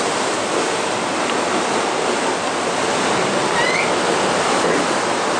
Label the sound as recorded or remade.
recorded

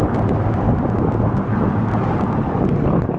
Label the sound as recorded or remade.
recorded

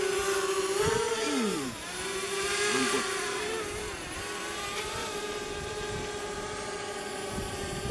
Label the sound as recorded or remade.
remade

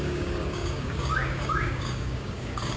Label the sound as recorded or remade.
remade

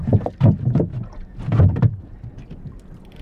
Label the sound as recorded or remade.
recorded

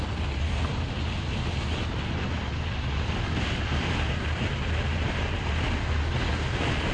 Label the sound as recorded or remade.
recorded